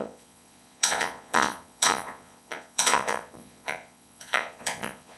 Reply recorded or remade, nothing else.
remade